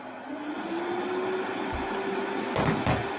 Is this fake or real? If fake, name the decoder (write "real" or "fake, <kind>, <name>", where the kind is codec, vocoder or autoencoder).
real